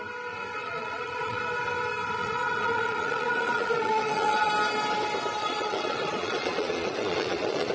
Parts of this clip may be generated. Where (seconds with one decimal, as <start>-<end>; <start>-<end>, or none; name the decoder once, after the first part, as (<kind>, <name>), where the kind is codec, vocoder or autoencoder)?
0.6-1.4 (vocoder, Vocos); 2.2-4.5; 5.4-7.7